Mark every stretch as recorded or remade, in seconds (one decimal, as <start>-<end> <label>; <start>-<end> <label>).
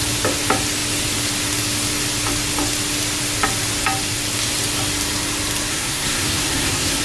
0.0-5.7 recorded; 5.7-7.0 remade